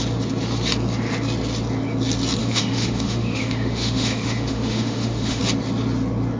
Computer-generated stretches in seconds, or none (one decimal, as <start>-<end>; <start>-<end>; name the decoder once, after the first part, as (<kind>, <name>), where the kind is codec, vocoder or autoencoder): 2.4-5.4 (autoencoder, DAC-VAE)